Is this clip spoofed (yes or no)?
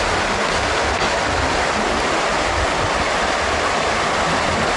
no